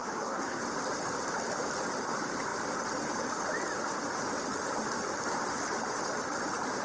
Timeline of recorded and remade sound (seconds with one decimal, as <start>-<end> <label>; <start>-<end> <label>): 0.0-0.6 remade; 0.6-6.8 recorded